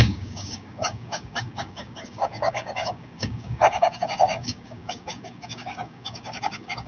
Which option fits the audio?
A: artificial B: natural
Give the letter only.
A